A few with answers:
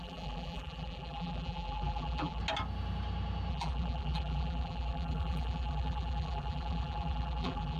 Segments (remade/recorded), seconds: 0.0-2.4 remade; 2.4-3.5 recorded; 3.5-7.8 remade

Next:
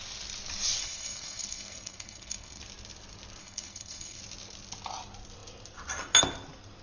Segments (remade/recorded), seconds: 0.0-0.8 recorded; 0.8-2.6 remade; 2.6-3.4 recorded; 3.4-4.2 remade; 4.2-6.8 recorded

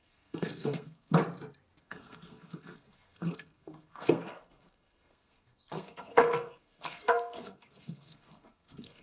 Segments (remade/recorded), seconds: 0.0-1.2 remade; 1.2-1.8 recorded; 1.8-9.0 remade

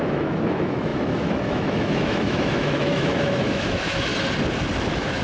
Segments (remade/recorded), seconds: 0.0-4.1 remade; 4.1-4.8 recorded; 4.8-5.2 remade